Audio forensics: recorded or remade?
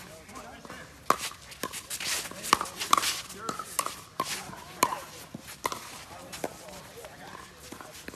recorded